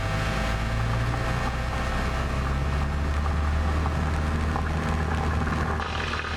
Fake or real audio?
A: real